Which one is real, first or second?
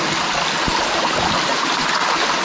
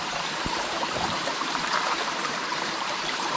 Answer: first